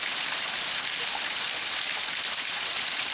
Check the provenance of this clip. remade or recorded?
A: remade